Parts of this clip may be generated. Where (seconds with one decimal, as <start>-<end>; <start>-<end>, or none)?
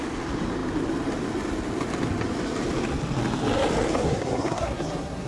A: 3.9-5.3